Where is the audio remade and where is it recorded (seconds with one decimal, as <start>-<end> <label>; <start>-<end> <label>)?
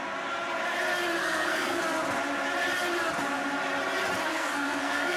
0.0-1.2 recorded; 1.2-1.8 remade; 1.8-4.3 recorded; 4.3-5.2 remade